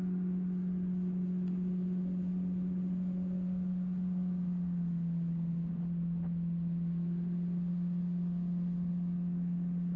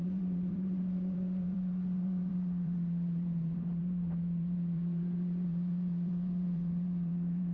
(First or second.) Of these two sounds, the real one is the first